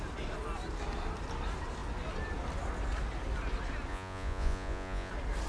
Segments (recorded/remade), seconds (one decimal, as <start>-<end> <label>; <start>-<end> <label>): 0.0-3.9 recorded; 3.9-5.1 remade; 5.1-5.5 recorded